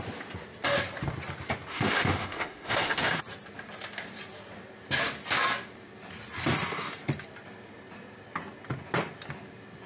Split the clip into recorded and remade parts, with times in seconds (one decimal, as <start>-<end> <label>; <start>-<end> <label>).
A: 0.0-1.7 recorded; 1.7-3.2 remade; 3.2-9.9 recorded